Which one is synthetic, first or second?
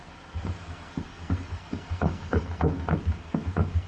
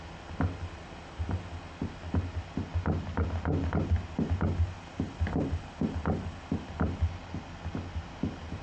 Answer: first